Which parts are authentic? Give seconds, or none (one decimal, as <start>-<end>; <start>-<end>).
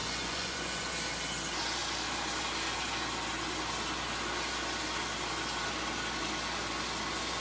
0.9-7.4